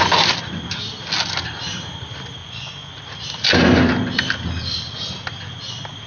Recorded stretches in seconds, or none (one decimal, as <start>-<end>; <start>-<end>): 0.0-2.4; 3.0-6.1